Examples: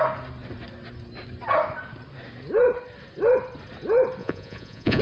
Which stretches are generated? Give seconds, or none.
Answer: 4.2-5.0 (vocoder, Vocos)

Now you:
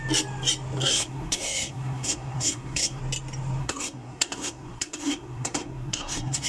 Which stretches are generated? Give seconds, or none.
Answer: 0.8-3.0 (codec, SNAC); 3.6-6.5